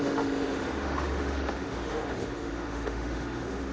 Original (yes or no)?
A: no